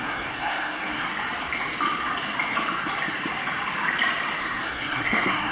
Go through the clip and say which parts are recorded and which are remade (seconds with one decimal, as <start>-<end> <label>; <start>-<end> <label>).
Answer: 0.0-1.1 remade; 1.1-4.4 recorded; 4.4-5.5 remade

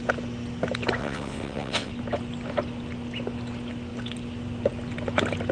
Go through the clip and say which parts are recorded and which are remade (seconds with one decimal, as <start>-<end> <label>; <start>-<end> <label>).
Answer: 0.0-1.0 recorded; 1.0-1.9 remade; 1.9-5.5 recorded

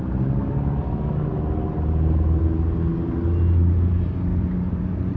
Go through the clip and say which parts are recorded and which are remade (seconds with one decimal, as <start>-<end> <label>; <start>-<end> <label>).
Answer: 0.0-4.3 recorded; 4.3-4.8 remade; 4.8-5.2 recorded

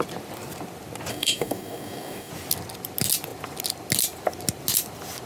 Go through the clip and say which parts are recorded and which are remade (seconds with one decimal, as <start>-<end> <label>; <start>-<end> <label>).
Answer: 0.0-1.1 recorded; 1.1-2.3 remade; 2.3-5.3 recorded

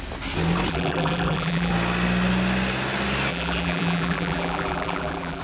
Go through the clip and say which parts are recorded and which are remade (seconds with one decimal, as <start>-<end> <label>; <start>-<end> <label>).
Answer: 0.0-0.7 recorded; 0.7-1.7 remade; 1.7-3.3 recorded; 3.3-5.4 remade